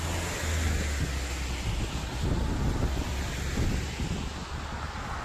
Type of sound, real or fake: real